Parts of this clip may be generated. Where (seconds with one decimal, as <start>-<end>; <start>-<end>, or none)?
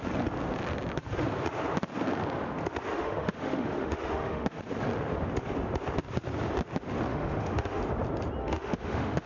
2.9-4.6; 7.1-7.8; 8.4-9.3